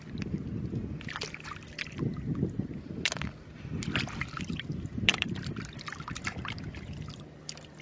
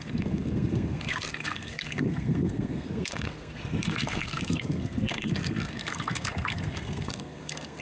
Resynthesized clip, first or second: second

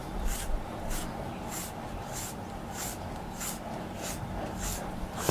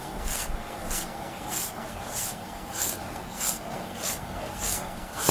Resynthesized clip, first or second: second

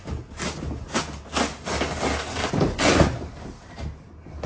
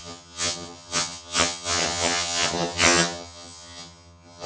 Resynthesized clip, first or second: second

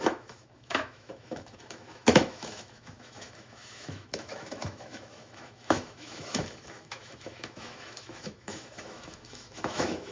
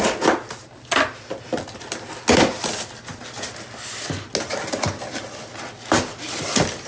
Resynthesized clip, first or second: first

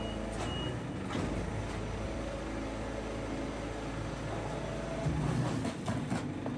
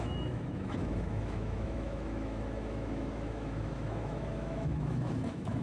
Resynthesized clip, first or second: second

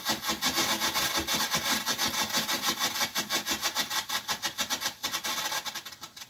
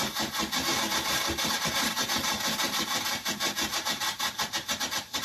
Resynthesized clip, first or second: second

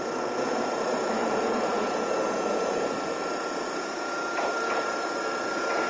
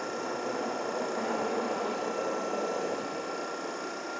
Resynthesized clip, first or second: first